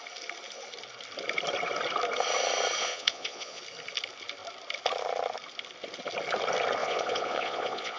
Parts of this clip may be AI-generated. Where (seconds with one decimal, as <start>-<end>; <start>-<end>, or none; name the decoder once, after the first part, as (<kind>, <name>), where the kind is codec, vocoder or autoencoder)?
2.8-3.6 (vocoder, Vocos); 6.8-8.0